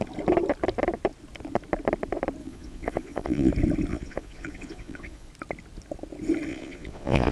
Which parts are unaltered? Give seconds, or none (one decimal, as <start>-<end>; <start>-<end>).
0.0-2.4; 3.5-3.9; 5.3-6.5